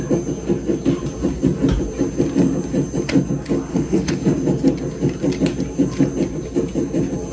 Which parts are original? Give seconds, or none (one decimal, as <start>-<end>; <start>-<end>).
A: 0.0-3.7; 4.2-7.3